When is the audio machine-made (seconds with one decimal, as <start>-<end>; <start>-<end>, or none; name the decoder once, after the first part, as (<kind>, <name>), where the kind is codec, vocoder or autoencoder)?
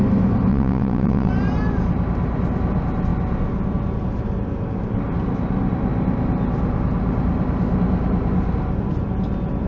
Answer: 0.5-1.3 (vocoder, WaveNeXt)